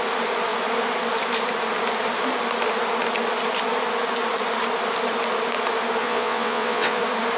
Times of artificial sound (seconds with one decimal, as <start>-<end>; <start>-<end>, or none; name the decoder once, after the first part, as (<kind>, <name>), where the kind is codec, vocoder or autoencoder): 6.0-7.0 (vocoder, WaveNeXt)